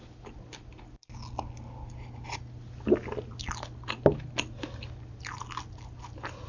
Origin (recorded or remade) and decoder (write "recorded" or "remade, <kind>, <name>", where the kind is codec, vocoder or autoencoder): recorded